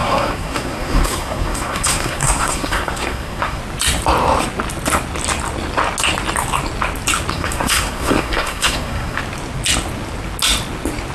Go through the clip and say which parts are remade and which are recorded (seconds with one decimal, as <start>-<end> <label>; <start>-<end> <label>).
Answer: 0.0-3.6 remade; 3.6-7.3 recorded; 7.3-9.2 remade; 9.2-11.1 recorded